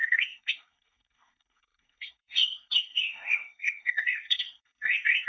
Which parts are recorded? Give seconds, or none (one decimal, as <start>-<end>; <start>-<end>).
none